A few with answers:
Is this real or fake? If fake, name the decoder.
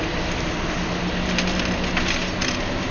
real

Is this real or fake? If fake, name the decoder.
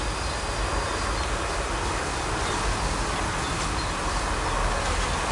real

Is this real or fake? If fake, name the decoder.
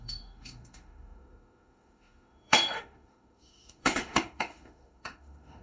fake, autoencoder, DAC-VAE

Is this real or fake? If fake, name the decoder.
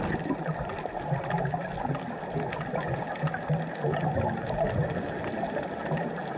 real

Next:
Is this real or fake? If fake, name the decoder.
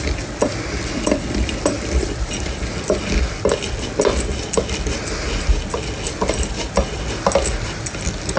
real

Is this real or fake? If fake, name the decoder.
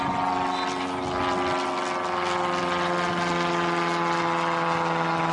real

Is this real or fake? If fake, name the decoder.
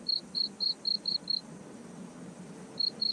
real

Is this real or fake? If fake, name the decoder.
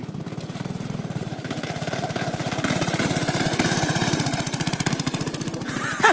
fake, vocoder, BigVGAN v2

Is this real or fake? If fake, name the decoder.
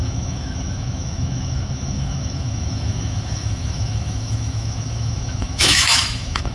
fake, autoencoder, DAC-VAE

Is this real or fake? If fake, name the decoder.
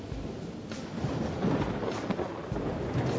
real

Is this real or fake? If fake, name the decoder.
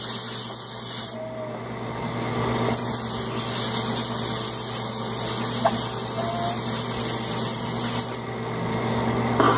real